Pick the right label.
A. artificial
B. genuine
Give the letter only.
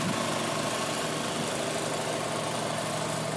B